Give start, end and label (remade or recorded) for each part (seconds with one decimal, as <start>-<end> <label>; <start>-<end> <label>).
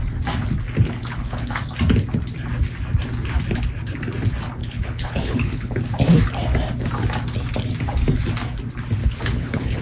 0.0-1.0 recorded; 1.0-1.6 remade; 1.6-4.6 recorded; 4.6-5.8 remade; 5.8-9.0 recorded; 9.0-9.8 remade